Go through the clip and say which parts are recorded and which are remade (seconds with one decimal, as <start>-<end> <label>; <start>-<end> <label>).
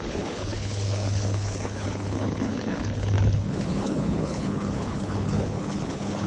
0.0-6.3 remade